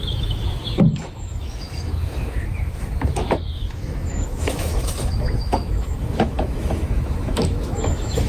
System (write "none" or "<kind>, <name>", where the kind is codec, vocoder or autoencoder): autoencoder, DAC-VAE